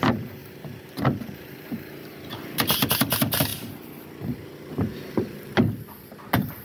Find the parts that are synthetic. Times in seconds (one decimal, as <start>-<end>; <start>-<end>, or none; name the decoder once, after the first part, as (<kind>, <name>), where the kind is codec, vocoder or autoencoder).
0.4-2.9 (vocoder, BigVGAN v2)